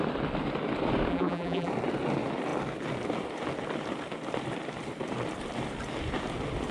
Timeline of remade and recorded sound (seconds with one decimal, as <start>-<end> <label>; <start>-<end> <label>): 0.0-1.1 recorded; 1.1-1.7 remade; 1.7-6.7 recorded